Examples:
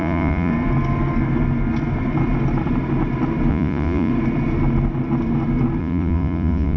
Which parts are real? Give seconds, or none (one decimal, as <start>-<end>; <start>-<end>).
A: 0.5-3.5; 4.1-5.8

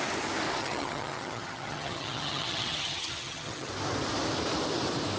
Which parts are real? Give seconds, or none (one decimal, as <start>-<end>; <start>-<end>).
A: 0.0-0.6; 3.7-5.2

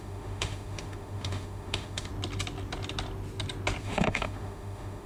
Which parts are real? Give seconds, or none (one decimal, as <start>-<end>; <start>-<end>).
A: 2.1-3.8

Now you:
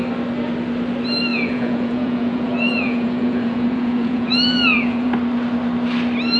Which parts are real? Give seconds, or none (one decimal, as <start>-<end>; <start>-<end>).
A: 0.0-1.3; 5.1-6.4

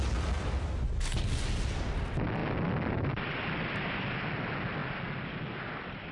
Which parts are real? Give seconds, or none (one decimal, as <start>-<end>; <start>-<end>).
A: 0.0-6.1

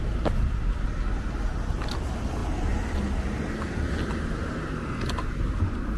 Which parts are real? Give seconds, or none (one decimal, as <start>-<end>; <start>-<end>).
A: 0.0-6.0